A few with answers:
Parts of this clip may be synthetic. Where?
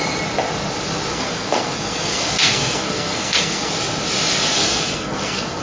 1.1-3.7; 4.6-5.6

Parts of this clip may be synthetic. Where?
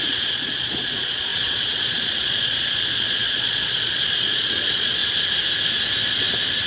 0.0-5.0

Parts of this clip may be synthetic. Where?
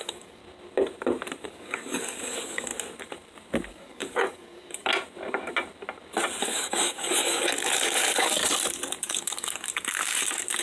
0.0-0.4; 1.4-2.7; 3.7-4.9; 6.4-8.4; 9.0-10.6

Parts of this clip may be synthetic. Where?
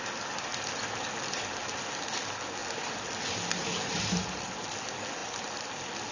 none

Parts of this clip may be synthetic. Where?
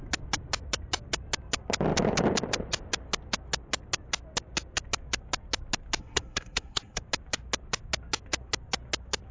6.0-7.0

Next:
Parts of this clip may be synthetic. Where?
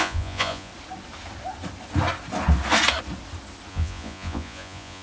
0.0-0.7; 3.7-5.0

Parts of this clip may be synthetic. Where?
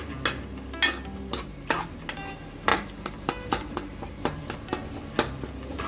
2.7-4.4